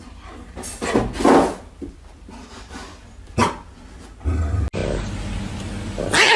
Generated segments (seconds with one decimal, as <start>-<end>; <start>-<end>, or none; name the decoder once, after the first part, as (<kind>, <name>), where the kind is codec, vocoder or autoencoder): none